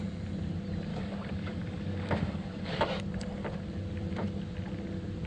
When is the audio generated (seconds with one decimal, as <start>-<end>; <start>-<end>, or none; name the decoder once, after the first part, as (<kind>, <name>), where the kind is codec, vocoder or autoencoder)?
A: 0.9-2.9 (codec, DAC)

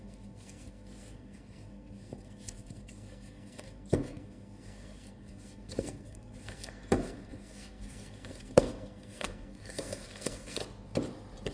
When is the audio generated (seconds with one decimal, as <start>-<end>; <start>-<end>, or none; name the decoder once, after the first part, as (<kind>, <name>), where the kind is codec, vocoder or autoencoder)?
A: 0.0-10.6 (codec, SNAC)

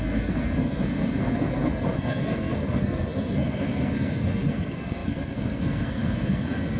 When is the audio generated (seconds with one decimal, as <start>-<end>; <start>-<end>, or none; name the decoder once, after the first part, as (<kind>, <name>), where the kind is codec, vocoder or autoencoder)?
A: 0.0-6.8 (codec, SNAC)

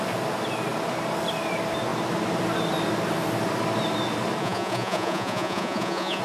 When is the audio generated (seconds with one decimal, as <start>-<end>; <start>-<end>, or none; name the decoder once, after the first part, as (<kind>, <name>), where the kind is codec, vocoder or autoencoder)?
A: 4.4-6.2 (vocoder, Vocos)